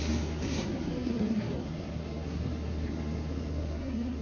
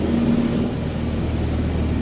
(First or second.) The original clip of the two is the second